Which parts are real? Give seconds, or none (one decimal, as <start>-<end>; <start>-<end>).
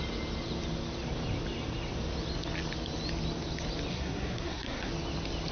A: 0.0-3.9; 4.9-5.5